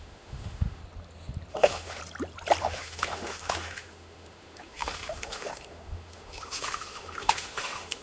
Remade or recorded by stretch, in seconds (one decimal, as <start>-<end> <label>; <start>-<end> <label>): 0.0-0.8 remade; 0.8-1.5 recorded; 1.5-2.0 remade; 2.0-2.6 recorded; 2.6-8.0 remade